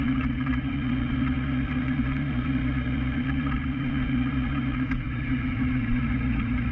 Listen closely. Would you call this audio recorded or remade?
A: remade